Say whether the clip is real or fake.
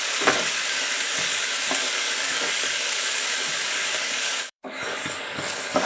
fake